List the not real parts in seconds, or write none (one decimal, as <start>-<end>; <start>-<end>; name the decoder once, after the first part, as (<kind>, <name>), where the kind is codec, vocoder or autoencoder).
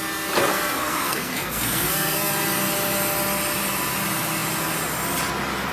0.5-2.3 (codec, SNAC)